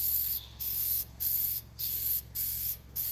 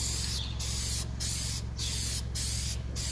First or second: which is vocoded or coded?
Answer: first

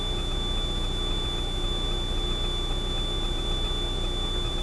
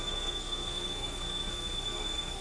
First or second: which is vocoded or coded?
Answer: second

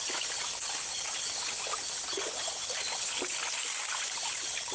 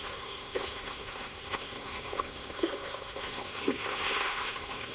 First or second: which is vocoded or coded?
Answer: second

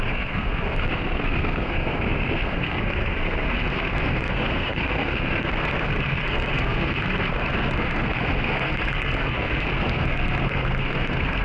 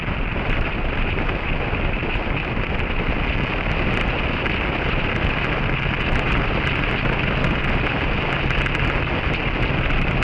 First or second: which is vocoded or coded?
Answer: first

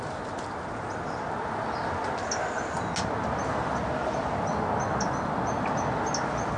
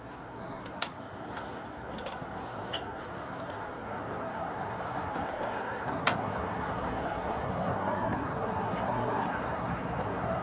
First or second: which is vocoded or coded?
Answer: second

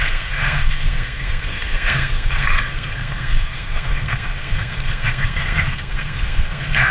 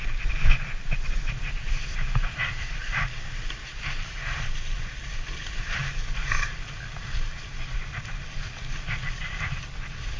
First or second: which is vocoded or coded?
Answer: first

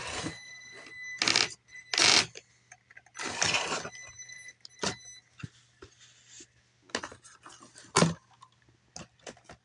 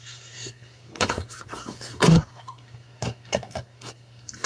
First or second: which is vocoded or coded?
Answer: second